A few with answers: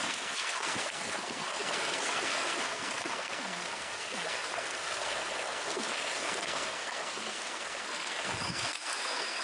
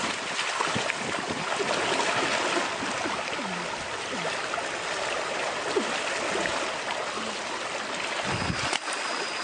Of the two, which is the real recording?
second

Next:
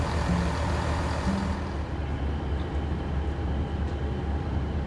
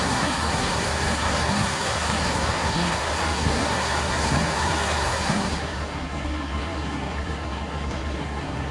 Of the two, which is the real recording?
first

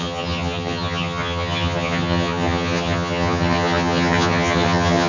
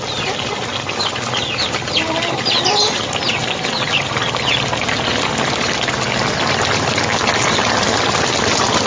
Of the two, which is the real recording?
second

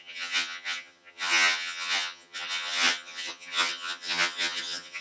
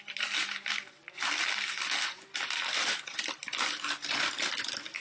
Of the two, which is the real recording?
second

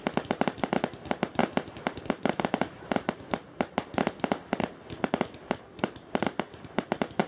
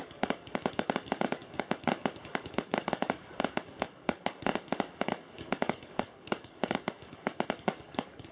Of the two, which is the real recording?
first